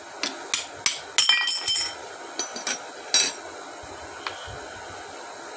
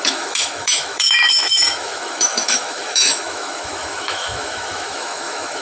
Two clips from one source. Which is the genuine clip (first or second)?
first